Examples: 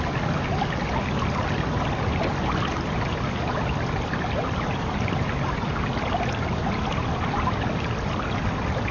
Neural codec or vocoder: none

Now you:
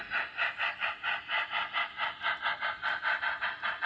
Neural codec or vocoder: none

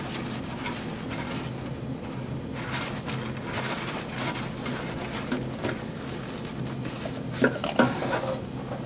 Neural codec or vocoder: none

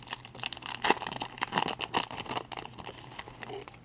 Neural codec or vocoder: none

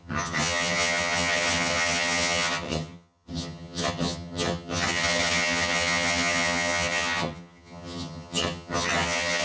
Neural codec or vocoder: vocoder, HiFi-GAN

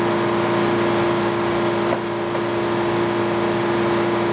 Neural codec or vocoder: none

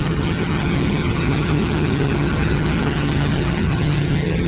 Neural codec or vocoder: vocoder, HiFi-GAN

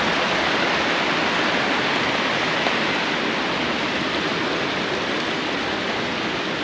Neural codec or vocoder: none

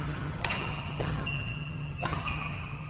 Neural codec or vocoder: vocoder, HiFi-GAN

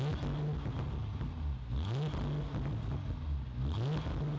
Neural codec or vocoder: none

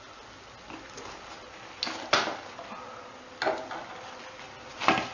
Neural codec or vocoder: none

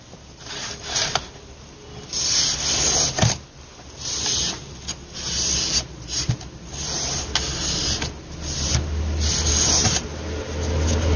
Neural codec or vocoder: none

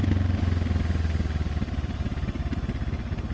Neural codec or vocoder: none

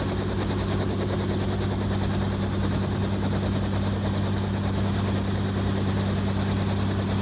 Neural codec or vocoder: none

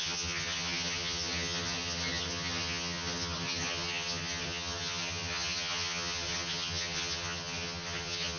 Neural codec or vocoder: vocoder, HiFi-GAN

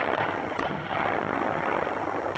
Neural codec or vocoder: vocoder, HiFi-GAN